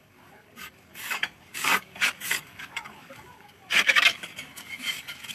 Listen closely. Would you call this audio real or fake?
fake